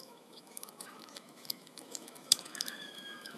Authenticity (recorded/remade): remade